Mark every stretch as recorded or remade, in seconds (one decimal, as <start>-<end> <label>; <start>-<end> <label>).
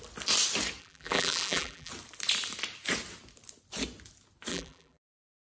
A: 0.0-0.8 recorded; 0.8-1.9 remade; 1.9-4.5 recorded; 4.5-5.5 remade